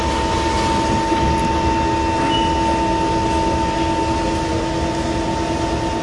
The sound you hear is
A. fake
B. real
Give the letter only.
B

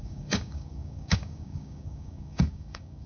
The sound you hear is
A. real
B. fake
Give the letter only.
B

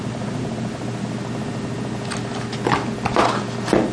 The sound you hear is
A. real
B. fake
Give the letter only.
A